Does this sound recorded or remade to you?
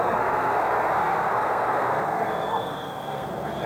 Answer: remade